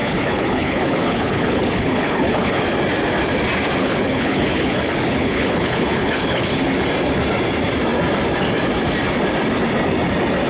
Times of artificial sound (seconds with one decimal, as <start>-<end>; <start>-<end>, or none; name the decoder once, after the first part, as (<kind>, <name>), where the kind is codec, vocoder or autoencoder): 0.0-2.6 (codec, HILCodec); 3.8-6.6